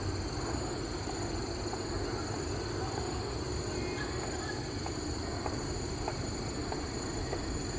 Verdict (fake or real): real